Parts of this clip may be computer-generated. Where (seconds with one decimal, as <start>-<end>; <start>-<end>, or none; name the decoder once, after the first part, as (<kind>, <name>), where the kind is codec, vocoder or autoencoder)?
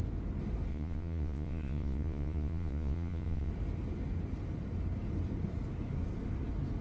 0.7-3.5 (vocoder, Vocos)